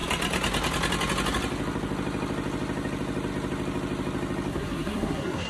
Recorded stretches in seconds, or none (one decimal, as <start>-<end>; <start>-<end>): 0.0-4.5